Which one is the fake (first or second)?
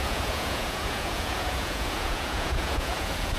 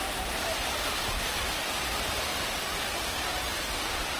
first